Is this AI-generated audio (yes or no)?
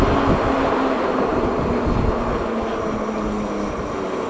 no